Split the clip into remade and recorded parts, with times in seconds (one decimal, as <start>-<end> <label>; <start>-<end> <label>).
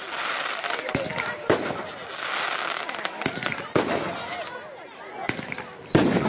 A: 0.0-6.3 recorded